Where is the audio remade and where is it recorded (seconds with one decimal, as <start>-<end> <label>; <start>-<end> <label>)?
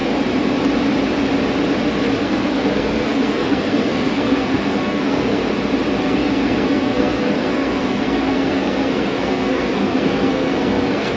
0.0-2.2 recorded; 2.2-5.4 remade; 5.4-6.0 recorded; 6.0-11.2 remade